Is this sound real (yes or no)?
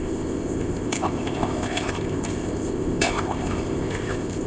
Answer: no